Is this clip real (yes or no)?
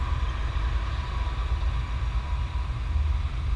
yes